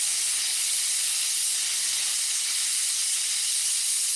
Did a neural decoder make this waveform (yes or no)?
no